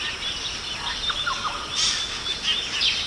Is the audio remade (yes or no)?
no